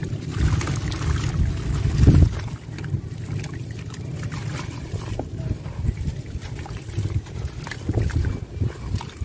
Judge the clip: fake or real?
real